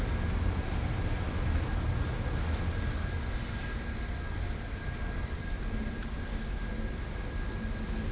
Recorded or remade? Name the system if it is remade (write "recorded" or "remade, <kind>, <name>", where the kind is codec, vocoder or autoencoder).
recorded